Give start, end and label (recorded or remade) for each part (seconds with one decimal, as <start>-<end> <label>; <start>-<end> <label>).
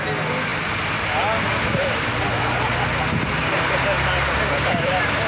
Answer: 0.0-5.3 recorded